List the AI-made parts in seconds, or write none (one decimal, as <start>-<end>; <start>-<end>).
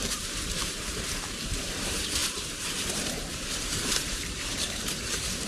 0.0-5.5